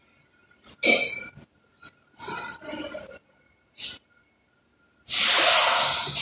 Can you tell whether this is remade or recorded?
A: recorded